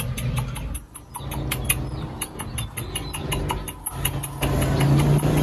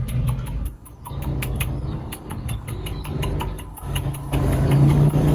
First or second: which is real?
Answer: first